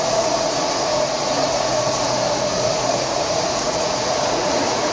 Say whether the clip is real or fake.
fake